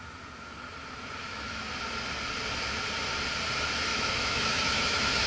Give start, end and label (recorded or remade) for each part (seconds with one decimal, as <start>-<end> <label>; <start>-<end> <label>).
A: 0.0-1.2 recorded; 1.2-1.7 remade; 1.7-3.9 recorded; 3.9-5.3 remade